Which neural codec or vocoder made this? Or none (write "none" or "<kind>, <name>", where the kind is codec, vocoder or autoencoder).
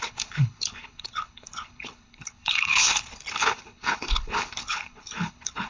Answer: codec, HILCodec